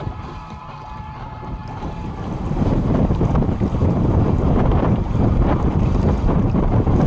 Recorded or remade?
remade